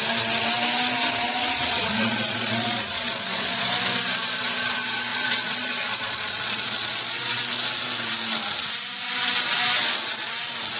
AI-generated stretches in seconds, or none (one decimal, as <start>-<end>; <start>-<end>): 1.2-3.7; 5.1-7.4